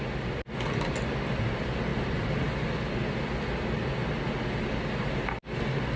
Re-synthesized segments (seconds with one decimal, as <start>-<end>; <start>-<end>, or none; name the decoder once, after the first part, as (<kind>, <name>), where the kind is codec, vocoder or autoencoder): none